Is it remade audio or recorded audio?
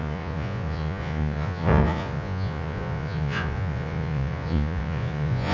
remade